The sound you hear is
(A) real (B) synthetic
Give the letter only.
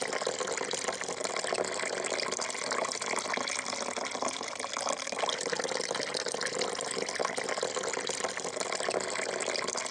A